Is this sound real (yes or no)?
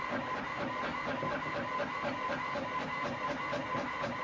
yes